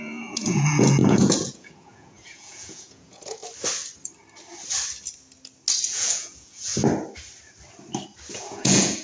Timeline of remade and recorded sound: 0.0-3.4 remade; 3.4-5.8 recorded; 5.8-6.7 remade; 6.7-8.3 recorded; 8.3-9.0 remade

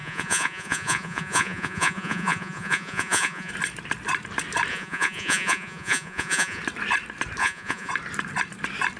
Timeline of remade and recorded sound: 0.0-3.5 remade; 3.5-4.7 recorded; 4.7-6.6 remade; 6.6-7.4 recorded; 7.4-7.9 remade; 7.9-9.0 recorded

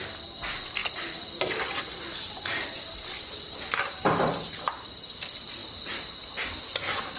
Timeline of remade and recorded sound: 0.0-7.2 recorded

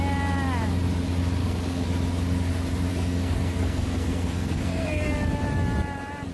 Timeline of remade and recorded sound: 0.0-1.4 recorded; 1.4-1.9 remade; 1.9-2.9 recorded; 2.9-5.1 remade; 5.1-6.3 recorded

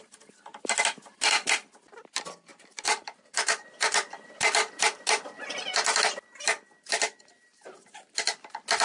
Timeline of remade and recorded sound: 0.0-2.5 recorded; 2.5-5.4 remade; 5.4-8.8 recorded

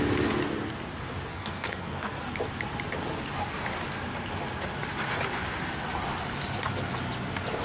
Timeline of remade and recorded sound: 0.0-1.3 recorded; 1.3-2.2 remade; 2.2-7.6 recorded

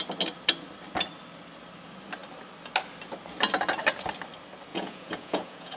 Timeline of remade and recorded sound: 0.0-4.7 recorded; 4.7-5.8 remade

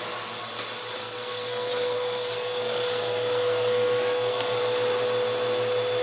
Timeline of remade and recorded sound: 0.0-1.0 recorded; 1.0-4.6 remade; 4.6-6.0 recorded